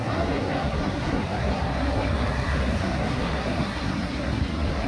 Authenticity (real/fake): fake